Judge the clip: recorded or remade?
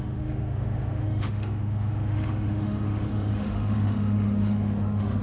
remade